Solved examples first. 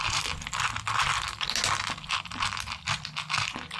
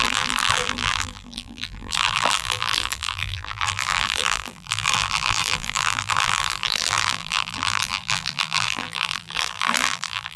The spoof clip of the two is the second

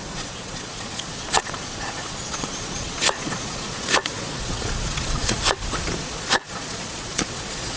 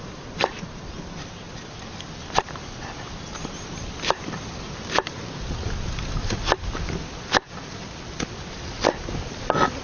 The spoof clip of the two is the first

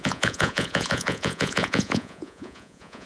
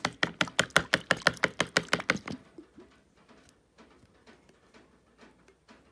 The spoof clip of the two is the first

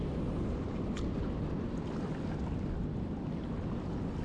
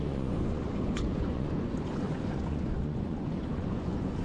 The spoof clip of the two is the second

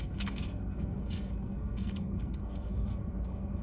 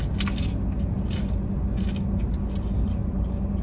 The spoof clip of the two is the first